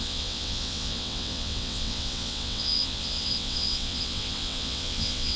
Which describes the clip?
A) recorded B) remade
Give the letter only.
B